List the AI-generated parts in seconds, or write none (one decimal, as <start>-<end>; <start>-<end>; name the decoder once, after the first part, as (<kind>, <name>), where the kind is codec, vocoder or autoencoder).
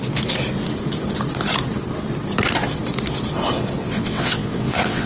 3.8-5.1 (vocoder, WaveNeXt)